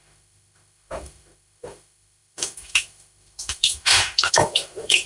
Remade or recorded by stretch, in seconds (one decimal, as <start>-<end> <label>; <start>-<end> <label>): 0.0-5.1 remade